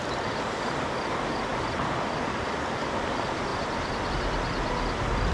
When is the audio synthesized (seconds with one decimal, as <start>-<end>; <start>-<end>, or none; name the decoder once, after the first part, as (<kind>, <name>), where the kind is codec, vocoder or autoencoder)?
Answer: none